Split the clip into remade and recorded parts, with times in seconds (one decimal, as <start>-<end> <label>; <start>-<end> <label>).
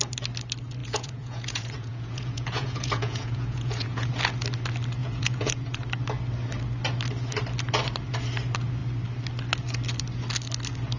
0.0-0.8 recorded; 0.8-4.1 remade; 4.1-5.0 recorded; 5.0-5.5 remade; 5.5-11.0 recorded